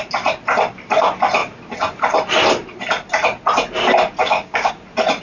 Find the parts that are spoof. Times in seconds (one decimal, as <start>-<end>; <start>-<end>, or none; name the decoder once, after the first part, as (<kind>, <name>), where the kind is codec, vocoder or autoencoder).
4.2-4.7 (codec, DAC)